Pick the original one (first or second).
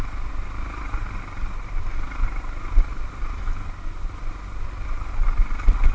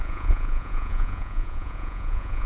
first